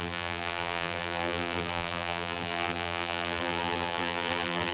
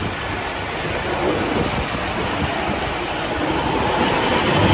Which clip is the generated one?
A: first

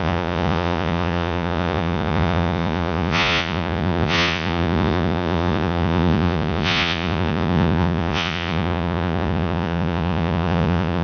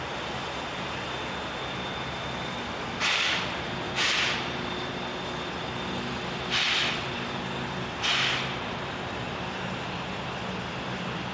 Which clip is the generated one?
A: first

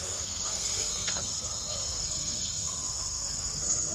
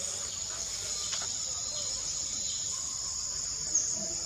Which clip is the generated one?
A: first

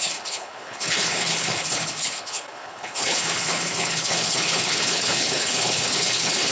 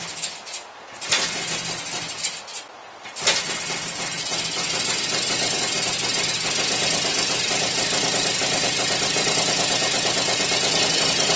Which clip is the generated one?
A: first